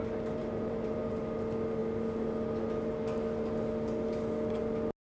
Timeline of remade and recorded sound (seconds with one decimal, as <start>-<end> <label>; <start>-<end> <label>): 0.0-0.4 recorded; 0.4-1.2 remade; 1.2-5.0 recorded